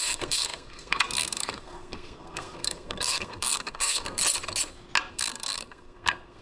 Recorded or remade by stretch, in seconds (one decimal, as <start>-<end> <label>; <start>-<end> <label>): 0.0-4.2 remade; 4.2-5.1 recorded; 5.1-6.4 remade